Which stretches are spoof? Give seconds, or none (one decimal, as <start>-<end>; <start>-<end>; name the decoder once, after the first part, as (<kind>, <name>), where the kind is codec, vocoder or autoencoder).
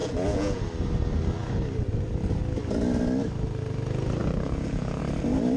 0.0-0.6 (vocoder, Vocos); 4.2-5.0